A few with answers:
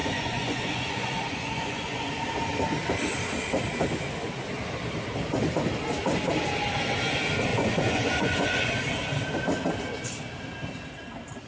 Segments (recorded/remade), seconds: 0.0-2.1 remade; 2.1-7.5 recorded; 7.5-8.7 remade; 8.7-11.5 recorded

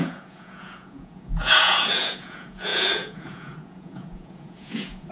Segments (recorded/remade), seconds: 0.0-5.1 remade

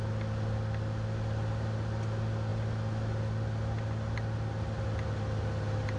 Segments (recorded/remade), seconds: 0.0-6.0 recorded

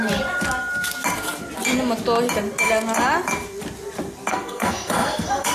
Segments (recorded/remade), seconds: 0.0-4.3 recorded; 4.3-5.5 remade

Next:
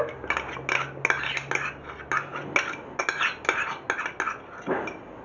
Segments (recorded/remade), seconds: 0.0-5.2 recorded

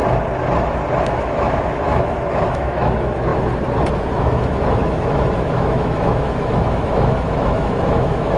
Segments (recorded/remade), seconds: 0.0-1.0 recorded; 1.0-3.3 remade; 3.3-4.1 recorded; 4.1-8.4 remade

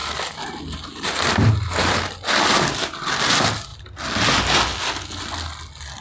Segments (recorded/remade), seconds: 0.0-6.0 recorded

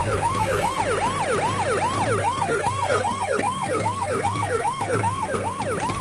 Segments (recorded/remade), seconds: 0.0-0.8 remade; 0.8-2.2 recorded; 2.2-5.6 remade; 5.6-6.0 recorded